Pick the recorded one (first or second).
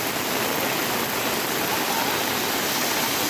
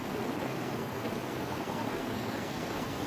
first